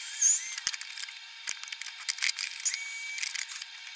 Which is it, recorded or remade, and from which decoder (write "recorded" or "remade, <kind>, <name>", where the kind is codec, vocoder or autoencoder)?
recorded